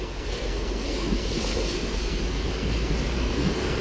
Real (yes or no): no